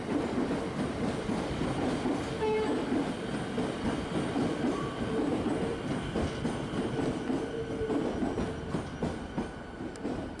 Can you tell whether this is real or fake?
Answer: real